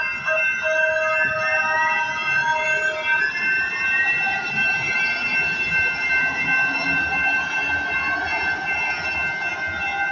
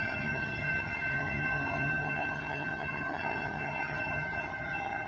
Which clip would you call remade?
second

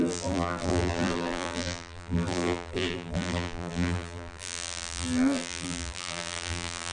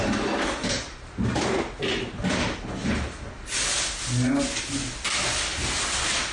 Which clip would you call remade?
first